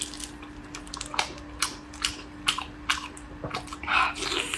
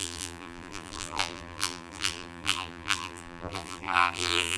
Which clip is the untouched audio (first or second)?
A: first